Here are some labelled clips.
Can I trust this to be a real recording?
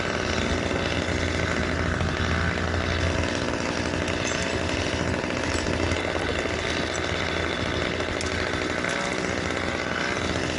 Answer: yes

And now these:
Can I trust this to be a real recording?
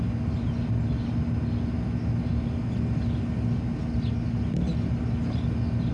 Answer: yes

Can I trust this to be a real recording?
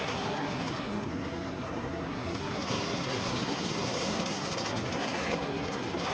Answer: no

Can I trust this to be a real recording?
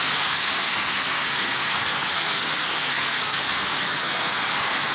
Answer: no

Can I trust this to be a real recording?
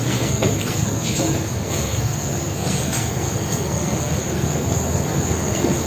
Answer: no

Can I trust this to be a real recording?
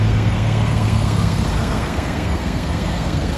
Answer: no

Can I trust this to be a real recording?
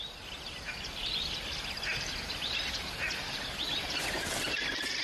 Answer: yes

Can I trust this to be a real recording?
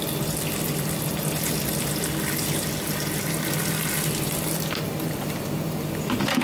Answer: yes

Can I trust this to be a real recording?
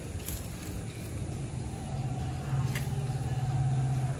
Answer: yes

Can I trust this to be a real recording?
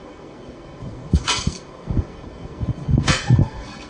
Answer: no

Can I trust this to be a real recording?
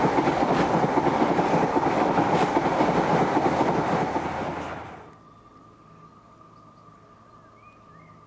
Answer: yes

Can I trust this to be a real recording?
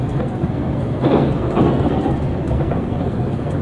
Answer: no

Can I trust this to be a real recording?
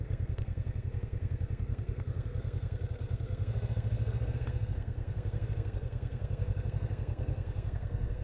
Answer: no